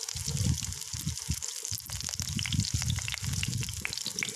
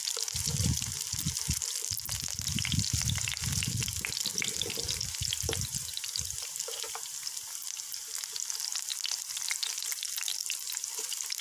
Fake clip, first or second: second